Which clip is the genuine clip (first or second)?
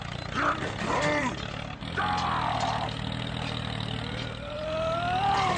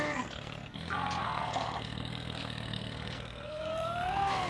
first